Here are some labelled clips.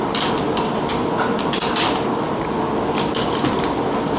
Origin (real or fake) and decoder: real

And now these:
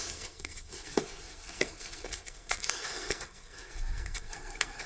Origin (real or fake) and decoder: fake, codec, SNAC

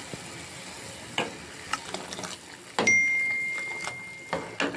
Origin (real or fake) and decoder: real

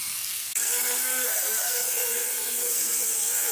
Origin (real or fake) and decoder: fake, codec, SNAC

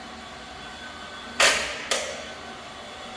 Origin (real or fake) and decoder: real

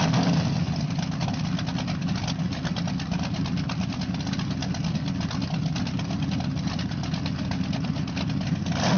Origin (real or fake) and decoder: real